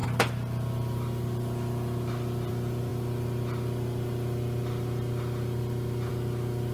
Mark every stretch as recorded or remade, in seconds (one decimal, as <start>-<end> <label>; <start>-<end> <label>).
0.0-6.7 recorded